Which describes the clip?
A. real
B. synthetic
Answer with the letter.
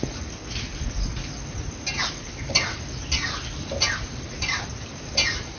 A